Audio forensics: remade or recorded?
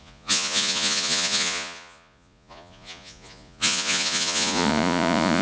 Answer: remade